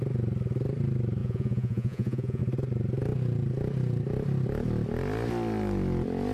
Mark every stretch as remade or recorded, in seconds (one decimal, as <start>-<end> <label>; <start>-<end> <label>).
0.0-1.2 recorded; 1.2-2.4 remade; 2.4-6.3 recorded